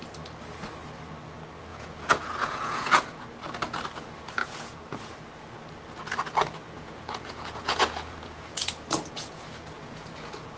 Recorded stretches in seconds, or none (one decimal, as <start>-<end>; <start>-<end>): 0.0-1.7; 3.2-4.4; 5.1-6.6